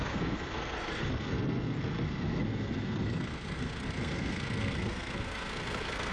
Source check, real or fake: fake